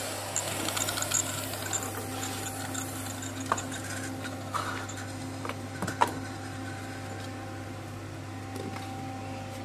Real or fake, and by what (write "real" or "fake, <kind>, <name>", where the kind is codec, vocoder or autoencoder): real